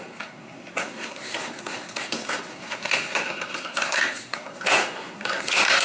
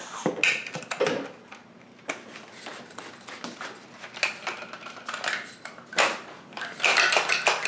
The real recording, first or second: second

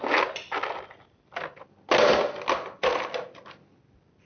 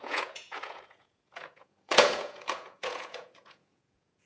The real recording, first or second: first